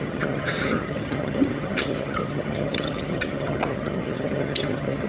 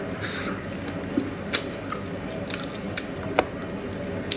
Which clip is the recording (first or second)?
second